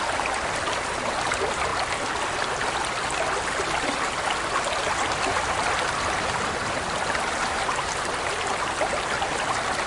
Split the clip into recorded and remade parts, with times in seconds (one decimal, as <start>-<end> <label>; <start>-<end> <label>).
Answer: 0.0-9.9 recorded